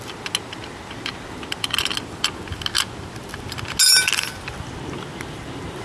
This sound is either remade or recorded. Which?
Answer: recorded